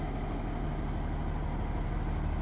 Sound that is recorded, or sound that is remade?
recorded